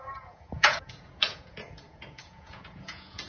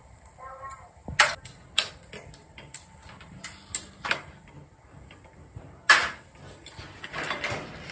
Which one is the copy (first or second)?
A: first